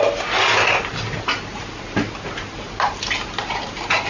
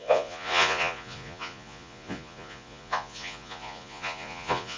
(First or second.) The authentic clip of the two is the first